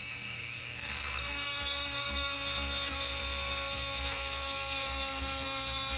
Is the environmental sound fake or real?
fake